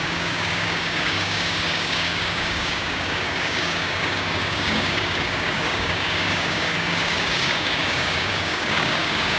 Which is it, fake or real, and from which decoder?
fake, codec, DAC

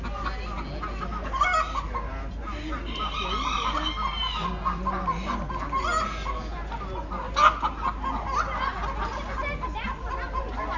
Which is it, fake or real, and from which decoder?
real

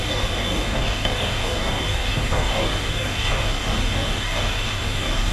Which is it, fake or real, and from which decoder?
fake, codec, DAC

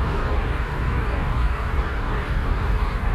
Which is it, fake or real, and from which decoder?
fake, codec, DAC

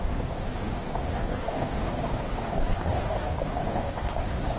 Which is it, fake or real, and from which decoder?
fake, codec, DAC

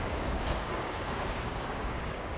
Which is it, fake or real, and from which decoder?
fake, codec, DAC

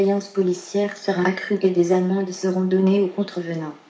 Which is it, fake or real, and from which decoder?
fake, codec, DAC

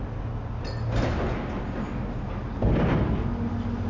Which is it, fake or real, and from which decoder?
real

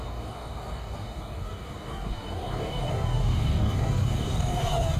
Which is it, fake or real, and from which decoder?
fake, codec, DAC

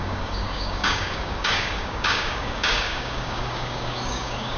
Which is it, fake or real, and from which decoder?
fake, codec, DAC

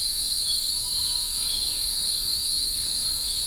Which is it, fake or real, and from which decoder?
fake, codec, DAC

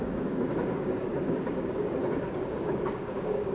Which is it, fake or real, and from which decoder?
fake, codec, DAC